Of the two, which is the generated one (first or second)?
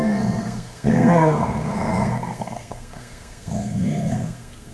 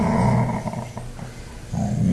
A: first